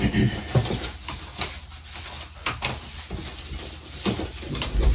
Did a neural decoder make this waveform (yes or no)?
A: no